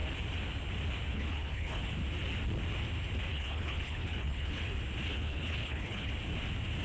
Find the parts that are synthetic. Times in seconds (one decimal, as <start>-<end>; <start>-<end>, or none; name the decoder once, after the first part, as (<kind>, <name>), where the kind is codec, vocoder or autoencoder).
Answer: 1.1-1.9 (codec, HILCodec); 3.3-4.6; 5.1-6.1